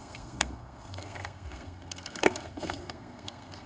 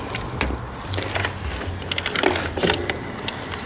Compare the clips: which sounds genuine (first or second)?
second